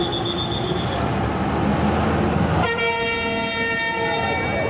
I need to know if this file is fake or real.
real